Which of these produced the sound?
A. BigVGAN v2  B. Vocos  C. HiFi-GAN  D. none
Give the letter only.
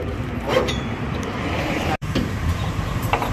A